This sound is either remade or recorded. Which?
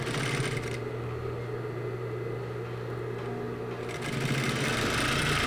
recorded